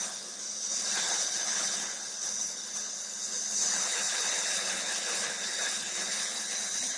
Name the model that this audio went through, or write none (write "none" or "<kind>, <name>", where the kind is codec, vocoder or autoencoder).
codec, HILCodec